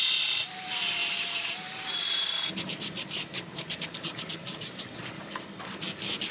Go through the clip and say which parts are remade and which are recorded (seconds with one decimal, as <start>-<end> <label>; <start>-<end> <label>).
0.0-6.3 remade